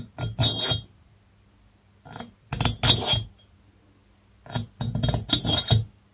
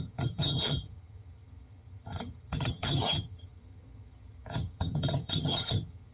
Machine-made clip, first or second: second